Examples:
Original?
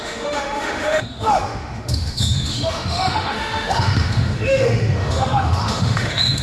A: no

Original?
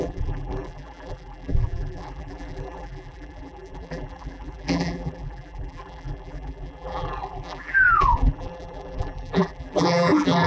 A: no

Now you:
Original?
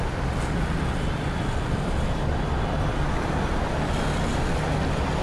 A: yes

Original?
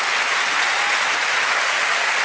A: yes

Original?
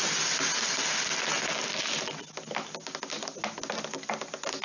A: yes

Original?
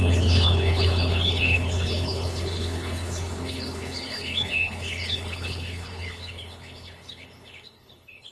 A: no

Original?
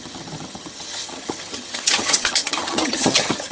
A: no